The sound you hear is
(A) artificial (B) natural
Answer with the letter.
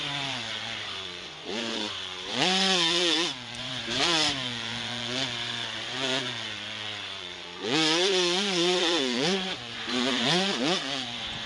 A